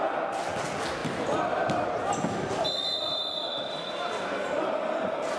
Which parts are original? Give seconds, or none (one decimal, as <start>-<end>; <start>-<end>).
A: 0.0-5.4